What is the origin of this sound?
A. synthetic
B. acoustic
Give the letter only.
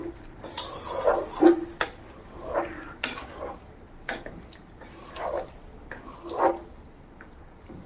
B